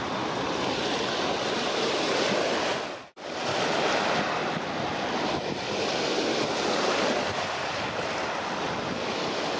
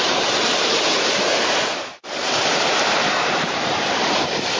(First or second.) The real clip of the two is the first